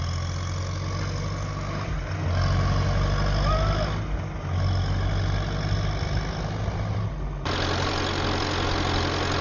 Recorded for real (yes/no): yes